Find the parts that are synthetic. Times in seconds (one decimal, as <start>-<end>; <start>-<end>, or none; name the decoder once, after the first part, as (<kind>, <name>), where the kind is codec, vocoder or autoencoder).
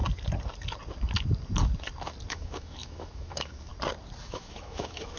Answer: 2.3-3.7 (autoencoder, DAC-VAE); 4.2-5.2